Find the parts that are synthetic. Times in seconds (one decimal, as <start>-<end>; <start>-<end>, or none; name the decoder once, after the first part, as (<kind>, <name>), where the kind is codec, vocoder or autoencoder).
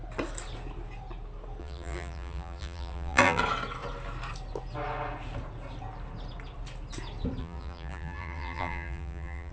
1.6-3.4 (vocoder, BigVGAN v2); 7.4-9.5